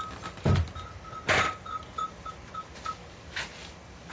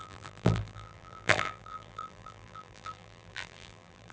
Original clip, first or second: first